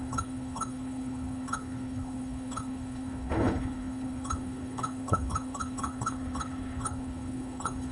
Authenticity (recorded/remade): remade